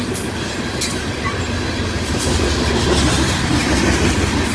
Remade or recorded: recorded